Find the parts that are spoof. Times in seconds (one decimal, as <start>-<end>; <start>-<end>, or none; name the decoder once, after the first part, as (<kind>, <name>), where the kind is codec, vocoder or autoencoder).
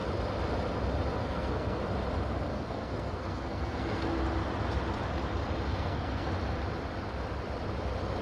1.2-1.8 (codec, SNAC); 2.5-4.1; 5.7-6.3